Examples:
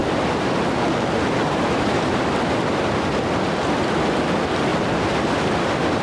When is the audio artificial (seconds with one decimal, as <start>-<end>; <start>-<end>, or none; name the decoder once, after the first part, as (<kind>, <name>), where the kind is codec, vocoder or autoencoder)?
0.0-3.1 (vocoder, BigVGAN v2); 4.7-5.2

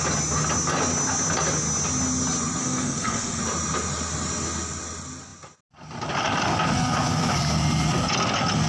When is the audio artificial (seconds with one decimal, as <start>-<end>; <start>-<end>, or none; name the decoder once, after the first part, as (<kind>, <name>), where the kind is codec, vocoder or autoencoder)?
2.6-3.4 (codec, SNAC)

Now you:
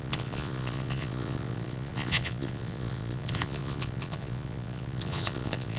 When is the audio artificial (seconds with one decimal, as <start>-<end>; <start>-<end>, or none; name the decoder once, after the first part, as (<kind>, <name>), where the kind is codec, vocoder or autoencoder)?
0.0-5.8 (vocoder, Vocos)

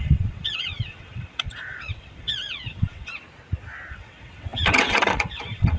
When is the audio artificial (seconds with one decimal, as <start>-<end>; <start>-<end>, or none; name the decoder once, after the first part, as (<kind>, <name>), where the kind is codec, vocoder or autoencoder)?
0.0-3.1 (vocoder, WaveNeXt); 3.9-5.8